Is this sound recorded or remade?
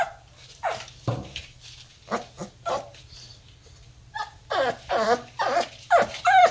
recorded